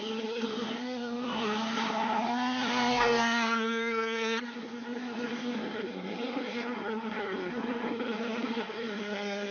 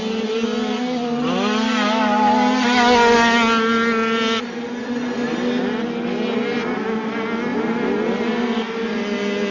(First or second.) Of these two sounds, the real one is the second